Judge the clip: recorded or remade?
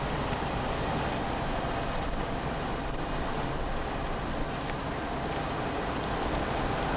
recorded